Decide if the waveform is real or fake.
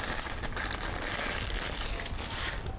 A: real